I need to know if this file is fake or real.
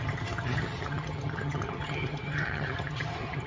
fake